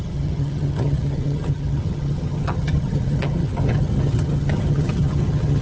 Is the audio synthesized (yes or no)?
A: yes